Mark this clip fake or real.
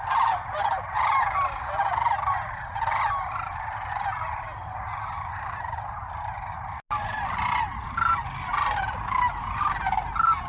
real